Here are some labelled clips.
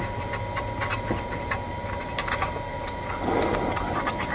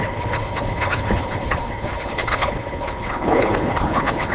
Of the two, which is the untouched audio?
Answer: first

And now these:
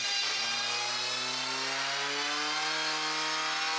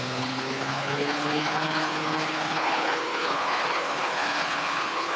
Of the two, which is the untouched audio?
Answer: first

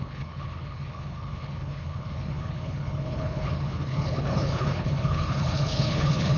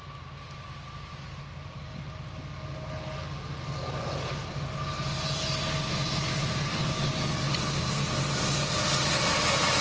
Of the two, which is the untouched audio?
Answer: second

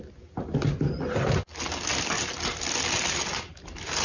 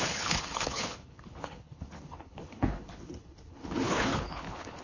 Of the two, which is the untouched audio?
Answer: first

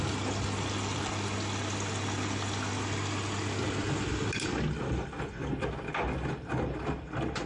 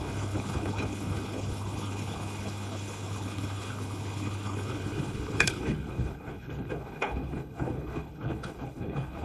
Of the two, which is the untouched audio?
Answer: first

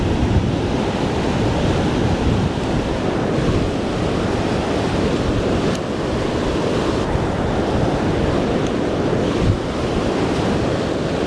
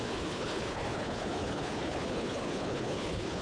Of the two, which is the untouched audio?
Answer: first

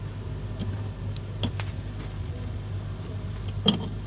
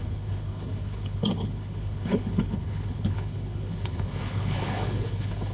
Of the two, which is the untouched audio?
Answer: first